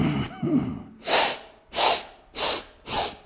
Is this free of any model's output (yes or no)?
yes